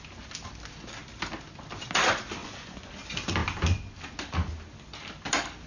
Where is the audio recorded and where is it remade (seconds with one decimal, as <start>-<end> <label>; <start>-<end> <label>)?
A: 0.0-2.4 recorded; 2.4-2.9 remade; 2.9-5.7 recorded